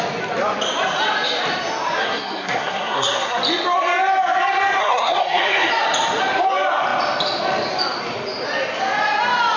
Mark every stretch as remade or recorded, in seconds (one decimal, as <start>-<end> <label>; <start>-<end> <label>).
0.0-2.0 recorded; 2.0-3.4 remade; 3.4-4.8 recorded; 4.8-5.7 remade; 5.7-9.6 recorded